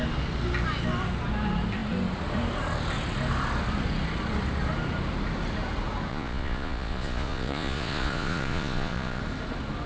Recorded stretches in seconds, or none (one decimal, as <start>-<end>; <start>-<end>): 0.0-6.1; 9.2-9.9